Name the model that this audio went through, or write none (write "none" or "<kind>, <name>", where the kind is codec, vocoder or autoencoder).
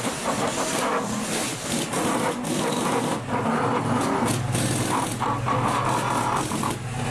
none